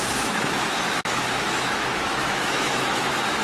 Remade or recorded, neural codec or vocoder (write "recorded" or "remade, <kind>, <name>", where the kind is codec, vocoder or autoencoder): remade, autoencoder, DAC-VAE